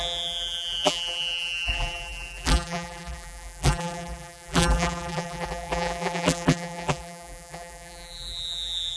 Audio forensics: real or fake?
fake